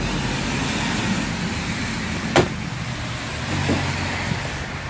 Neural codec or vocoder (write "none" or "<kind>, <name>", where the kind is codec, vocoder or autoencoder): none